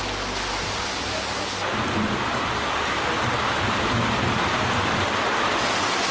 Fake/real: real